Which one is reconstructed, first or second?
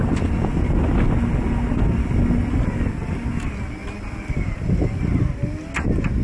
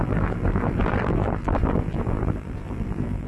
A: second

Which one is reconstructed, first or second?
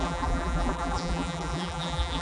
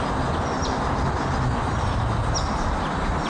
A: first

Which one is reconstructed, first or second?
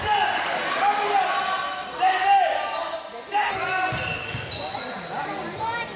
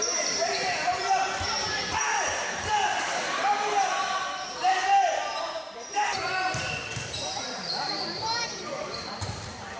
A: second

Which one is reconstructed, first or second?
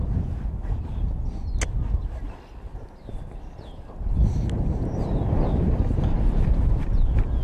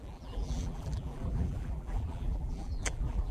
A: second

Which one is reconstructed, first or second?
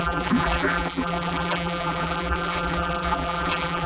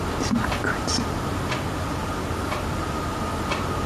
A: first